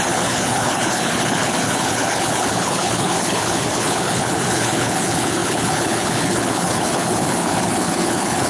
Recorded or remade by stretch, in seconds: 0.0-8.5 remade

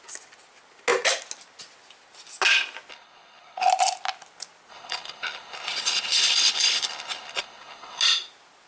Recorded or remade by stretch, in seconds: 0.0-2.9 recorded; 2.9-3.7 remade; 3.7-4.7 recorded; 4.7-8.0 remade; 8.0-8.7 recorded

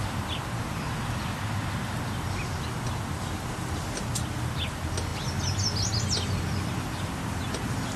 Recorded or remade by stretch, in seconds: 0.0-8.0 recorded

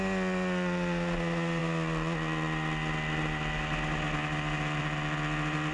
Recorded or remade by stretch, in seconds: 0.0-5.7 recorded

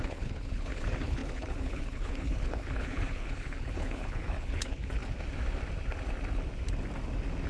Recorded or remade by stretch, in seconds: 0.0-5.0 remade; 5.0-7.5 recorded

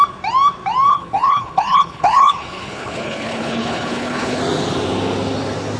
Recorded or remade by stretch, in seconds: 0.0-0.9 recorded; 0.9-4.4 remade; 4.4-5.8 recorded